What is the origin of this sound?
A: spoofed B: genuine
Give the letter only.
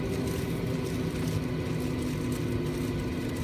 B